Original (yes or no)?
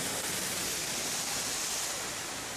yes